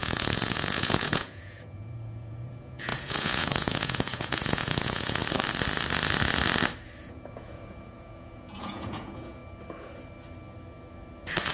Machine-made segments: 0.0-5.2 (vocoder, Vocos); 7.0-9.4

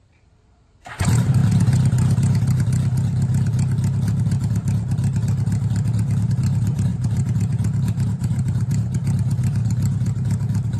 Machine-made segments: 0.0-1.4 (vocoder, BigVGAN v2); 6.3-10.8

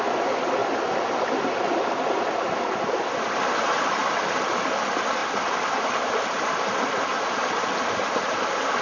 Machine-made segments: 0.6-1.5 (vocoder, BigVGAN v2); 4.0-4.5; 5.2-7.0

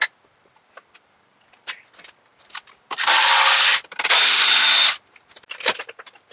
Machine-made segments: none

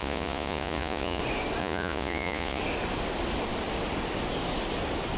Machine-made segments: 0.0-1.2 (vocoder, Vocos); 1.6-2.6

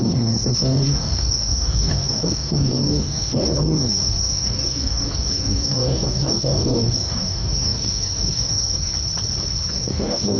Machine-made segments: 0.0-8.9 (codec, DAC); 9.7-10.4

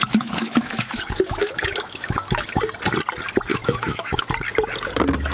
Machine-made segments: 0.0-2.5 (autoencoder, DAC-VAE); 3.5-4.3